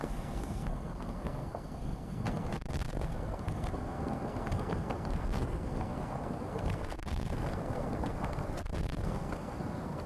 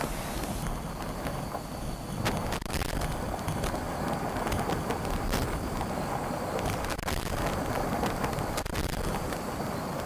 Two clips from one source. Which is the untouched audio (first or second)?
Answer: second